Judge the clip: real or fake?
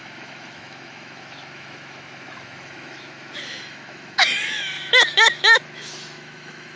fake